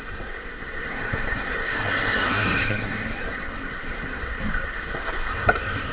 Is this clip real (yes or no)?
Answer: no